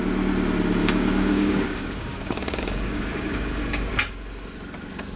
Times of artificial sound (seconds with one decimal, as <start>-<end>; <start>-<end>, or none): 0.8-3.9